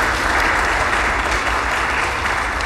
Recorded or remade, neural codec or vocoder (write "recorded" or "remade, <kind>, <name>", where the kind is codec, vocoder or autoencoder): recorded